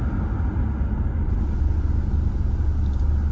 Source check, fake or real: real